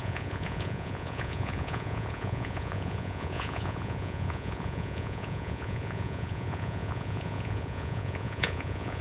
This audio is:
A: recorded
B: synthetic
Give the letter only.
B